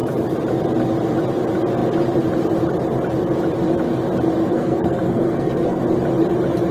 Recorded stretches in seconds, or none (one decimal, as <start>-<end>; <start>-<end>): 0.0-4.4; 5.8-6.7